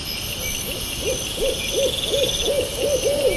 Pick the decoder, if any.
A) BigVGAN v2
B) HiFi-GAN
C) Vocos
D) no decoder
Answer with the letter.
D